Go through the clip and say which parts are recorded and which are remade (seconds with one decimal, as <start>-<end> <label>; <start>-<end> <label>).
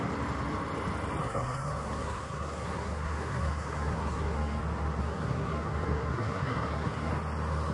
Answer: 0.0-1.2 recorded; 1.2-4.6 remade; 4.6-5.0 recorded; 5.0-7.1 remade; 7.1-7.7 recorded